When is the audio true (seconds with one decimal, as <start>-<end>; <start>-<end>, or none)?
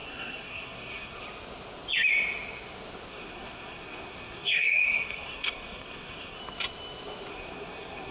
1.2-3.1; 6.4-7.3